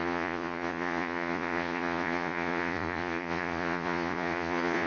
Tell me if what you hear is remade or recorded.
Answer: remade